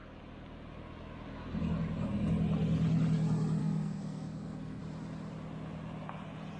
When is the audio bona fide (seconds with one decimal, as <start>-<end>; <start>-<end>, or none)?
0.0-3.6; 4.8-6.6